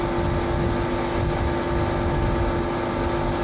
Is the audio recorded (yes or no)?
yes